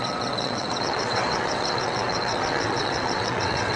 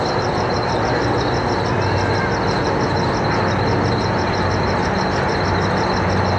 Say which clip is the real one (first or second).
second